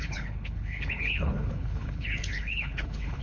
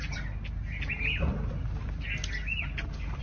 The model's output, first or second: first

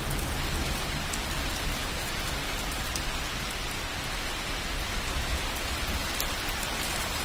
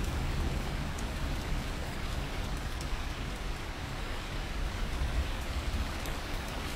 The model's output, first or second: second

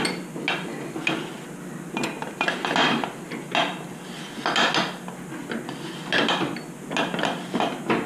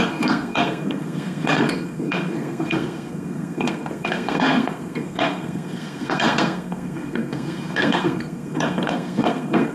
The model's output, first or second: second